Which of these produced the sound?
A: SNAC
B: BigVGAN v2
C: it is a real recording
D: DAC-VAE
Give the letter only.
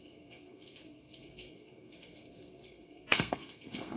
A